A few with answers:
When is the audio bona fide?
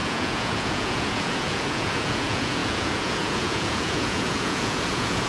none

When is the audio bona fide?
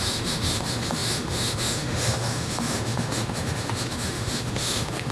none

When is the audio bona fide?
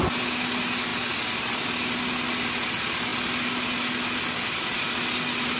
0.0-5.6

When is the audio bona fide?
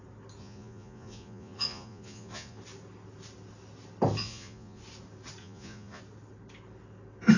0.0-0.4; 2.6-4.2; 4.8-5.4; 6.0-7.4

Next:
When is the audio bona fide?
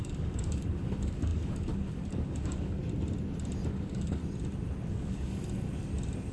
2.8-3.7; 4.2-4.9; 5.4-6.3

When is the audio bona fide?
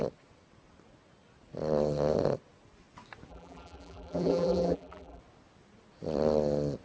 0.0-3.3; 5.2-6.8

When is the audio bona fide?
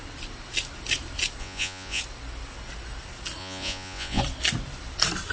0.0-1.4; 2.0-3.4; 4.2-5.3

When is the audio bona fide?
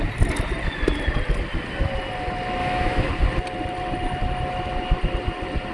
0.0-2.6; 3.1-5.7